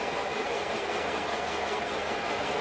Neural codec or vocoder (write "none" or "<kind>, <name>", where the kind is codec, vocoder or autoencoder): codec, SNAC